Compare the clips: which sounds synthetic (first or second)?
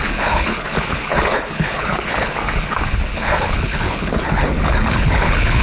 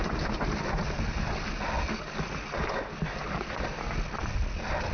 first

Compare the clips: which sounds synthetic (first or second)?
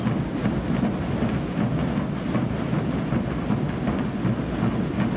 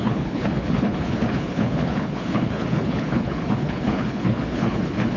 second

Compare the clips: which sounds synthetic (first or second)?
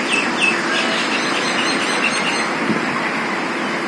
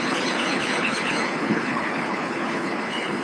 second